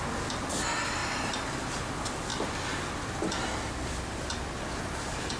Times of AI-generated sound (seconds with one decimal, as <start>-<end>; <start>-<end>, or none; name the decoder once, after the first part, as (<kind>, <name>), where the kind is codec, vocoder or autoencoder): none